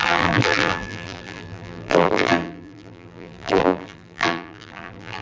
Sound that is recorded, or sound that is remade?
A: remade